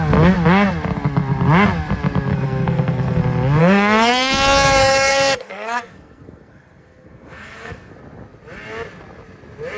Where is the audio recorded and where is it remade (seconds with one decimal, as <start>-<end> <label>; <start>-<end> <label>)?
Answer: 0.0-2.3 recorded; 2.3-3.2 remade; 3.2-3.6 recorded; 3.6-7.9 remade; 7.9-9.8 recorded